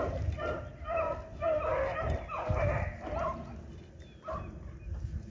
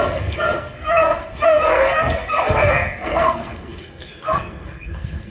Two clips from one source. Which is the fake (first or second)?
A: second